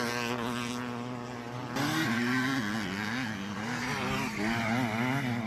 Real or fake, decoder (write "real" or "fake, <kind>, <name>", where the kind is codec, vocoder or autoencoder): real